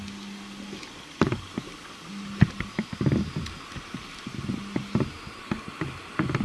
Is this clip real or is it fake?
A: real